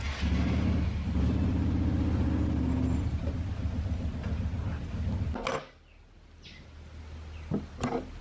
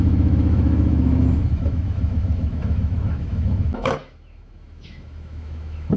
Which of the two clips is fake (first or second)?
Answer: second